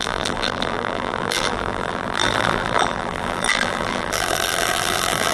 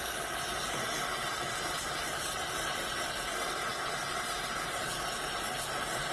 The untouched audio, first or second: second